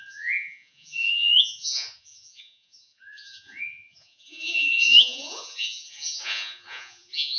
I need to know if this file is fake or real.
fake